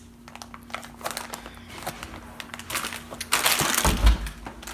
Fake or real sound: real